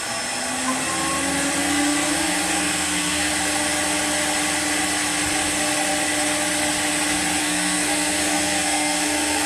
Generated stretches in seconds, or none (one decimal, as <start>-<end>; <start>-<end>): 1.6-3.3; 7.4-9.5